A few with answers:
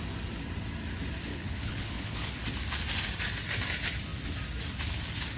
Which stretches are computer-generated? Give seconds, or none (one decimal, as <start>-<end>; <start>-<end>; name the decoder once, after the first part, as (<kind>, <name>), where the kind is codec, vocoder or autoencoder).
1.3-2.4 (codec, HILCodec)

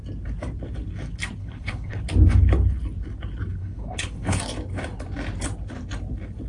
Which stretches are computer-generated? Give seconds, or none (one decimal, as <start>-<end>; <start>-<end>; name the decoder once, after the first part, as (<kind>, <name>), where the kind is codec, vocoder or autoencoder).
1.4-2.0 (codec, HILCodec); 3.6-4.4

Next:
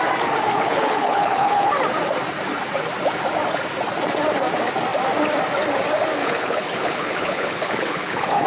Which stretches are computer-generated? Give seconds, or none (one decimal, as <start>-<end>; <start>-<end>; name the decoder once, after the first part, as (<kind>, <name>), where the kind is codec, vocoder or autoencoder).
0.5-1.7 (codec, HILCodec); 6.2-8.5

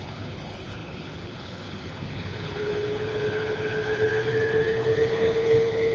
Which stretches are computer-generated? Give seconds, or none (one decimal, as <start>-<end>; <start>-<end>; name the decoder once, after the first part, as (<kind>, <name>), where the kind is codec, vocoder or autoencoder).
0.0-5.9 (codec, HILCodec)

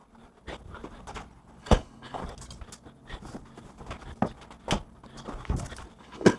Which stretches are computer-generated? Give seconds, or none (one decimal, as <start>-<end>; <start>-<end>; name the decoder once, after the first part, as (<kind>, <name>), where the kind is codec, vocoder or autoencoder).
1.6-2.2 (codec, HILCodec); 6.0-6.4

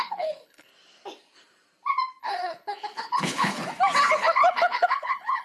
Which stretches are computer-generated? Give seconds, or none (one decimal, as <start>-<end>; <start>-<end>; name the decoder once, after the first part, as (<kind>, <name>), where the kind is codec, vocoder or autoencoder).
0.0-0.7 (codec, HILCodec); 2.2-3.6; 4.1-5.4